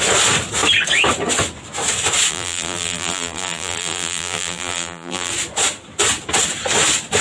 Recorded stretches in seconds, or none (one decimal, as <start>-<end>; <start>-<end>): 0.0-2.3; 5.3-7.2